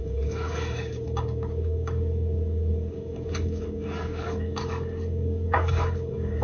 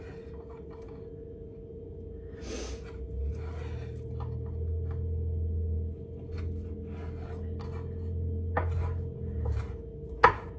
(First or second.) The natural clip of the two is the second